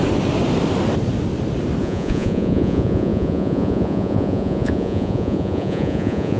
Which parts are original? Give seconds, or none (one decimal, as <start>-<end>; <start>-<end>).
0.0-1.8